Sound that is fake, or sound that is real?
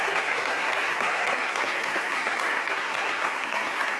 fake